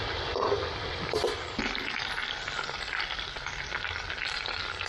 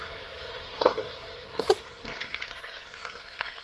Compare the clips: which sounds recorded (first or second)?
first